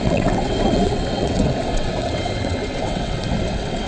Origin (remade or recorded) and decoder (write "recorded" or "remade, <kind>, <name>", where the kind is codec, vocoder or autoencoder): remade, vocoder, WaveNeXt